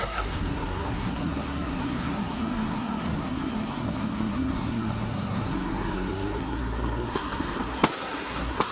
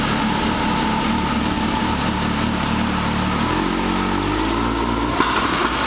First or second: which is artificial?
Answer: first